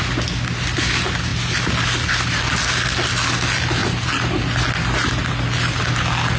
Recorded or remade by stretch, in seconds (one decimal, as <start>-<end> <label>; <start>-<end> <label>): 0.0-6.4 recorded